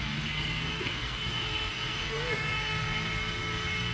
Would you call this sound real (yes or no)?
no